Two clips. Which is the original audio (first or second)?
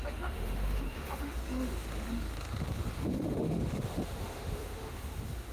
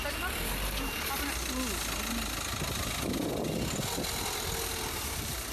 second